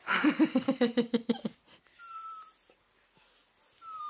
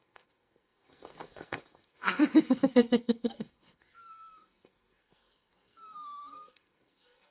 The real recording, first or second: first